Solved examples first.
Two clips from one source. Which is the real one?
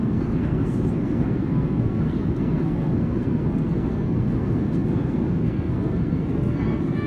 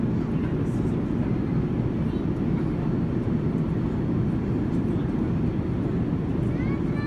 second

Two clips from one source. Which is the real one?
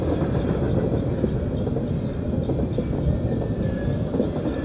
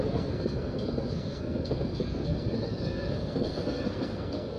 first